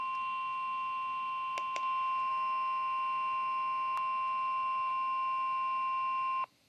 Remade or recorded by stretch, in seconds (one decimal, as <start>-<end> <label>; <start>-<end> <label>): 0.0-6.7 recorded